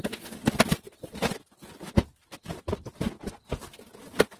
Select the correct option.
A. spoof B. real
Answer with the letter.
B